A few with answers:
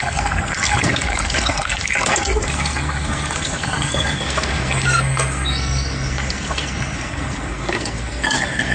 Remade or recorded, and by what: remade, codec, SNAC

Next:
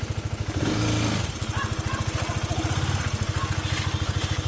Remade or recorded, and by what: recorded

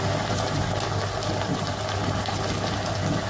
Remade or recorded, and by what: recorded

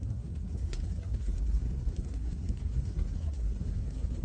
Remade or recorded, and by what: remade, codec, SNAC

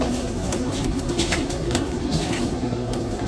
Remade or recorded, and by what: remade, codec, SNAC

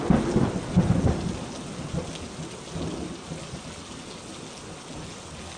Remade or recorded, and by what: recorded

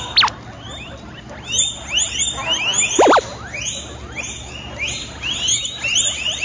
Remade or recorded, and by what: recorded